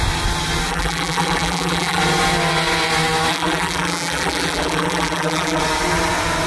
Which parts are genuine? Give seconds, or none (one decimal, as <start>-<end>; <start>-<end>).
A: 0.0-0.7; 2.0-3.3; 5.6-6.5